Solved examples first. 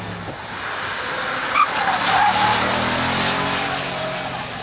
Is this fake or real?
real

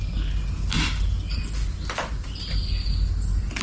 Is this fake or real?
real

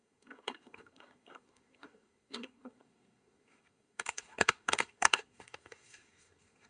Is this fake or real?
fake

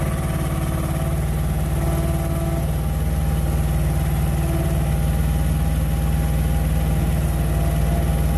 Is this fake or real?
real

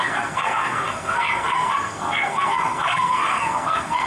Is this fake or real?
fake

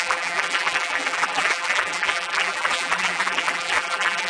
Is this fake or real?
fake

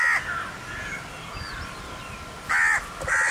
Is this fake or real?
real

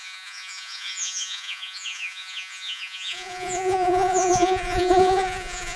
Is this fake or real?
fake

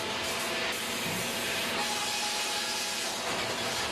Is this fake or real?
real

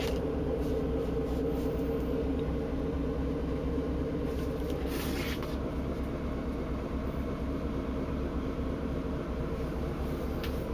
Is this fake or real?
fake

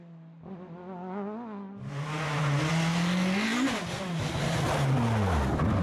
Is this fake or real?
real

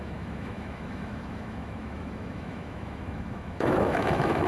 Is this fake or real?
fake